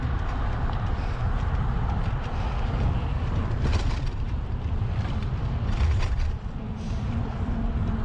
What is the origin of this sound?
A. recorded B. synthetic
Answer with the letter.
B